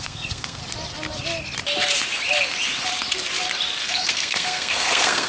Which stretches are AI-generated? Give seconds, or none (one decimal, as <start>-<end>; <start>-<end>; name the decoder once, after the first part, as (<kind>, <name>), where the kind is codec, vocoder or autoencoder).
0.0-0.6 (codec, SNAC); 3.8-5.3